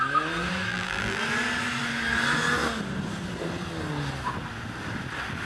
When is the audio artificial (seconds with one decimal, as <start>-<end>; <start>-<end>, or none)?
0.7-1.2

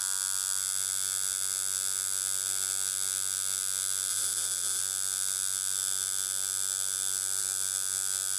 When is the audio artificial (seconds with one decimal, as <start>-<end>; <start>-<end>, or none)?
4.1-4.8

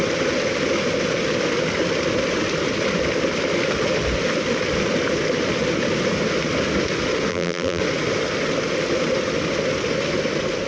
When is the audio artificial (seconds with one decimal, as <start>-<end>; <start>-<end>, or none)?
7.3-7.8

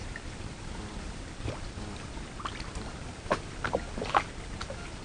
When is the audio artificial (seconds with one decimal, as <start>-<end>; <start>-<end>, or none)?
0.0-1.5

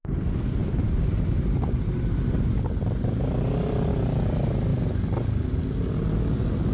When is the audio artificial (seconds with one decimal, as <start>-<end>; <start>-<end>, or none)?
0.6-3.9; 4.7-5.9

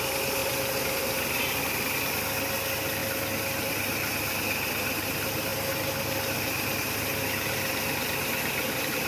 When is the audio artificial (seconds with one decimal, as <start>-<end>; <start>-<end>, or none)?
0.4-1.0

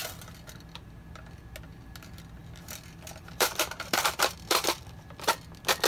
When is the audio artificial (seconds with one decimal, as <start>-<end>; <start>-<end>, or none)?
2.4-5.3

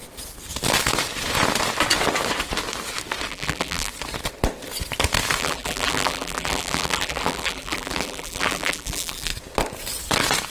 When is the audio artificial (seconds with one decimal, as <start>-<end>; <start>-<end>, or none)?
3.3-3.9; 5.4-9.3